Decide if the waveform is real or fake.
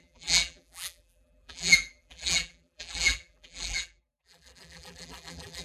fake